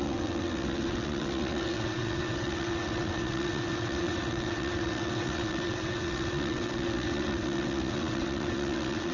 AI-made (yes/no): yes